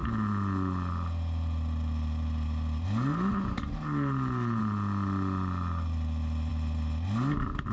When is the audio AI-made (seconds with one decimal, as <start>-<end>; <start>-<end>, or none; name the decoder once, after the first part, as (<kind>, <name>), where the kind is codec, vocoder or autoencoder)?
none